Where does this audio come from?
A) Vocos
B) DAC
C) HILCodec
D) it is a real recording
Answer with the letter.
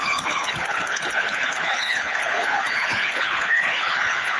C